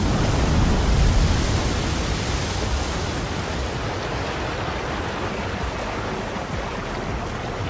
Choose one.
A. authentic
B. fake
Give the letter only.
A